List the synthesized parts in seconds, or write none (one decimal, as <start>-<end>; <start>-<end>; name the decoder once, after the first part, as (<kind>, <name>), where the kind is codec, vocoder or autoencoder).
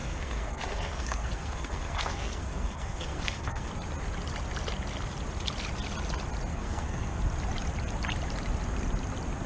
0.0-3.7 (codec, SNAC); 6.5-7.2